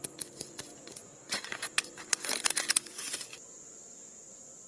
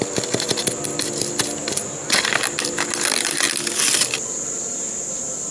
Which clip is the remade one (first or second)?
first